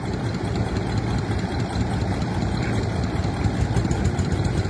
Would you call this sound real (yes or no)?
yes